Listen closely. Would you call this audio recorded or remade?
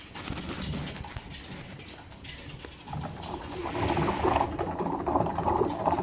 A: recorded